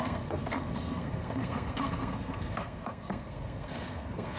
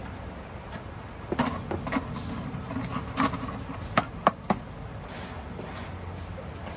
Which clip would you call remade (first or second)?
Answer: first